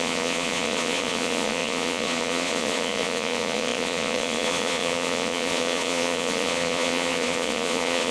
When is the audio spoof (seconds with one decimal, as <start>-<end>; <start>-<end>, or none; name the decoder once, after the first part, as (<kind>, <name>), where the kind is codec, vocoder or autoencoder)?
0.0-8.1 (vocoder, Vocos)